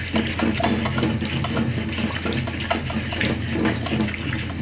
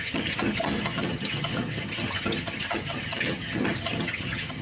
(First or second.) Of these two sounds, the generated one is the second